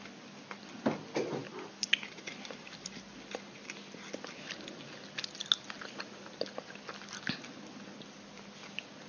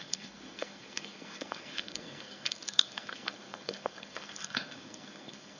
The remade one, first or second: second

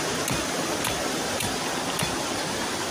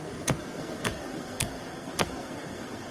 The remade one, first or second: second